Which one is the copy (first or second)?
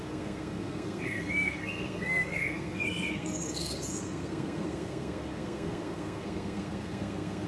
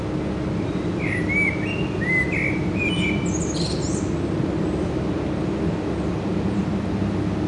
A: first